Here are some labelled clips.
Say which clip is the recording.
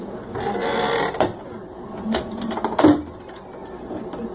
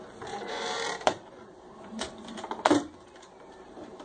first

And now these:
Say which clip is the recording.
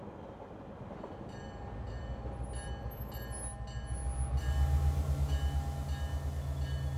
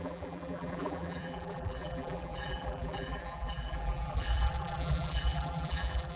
first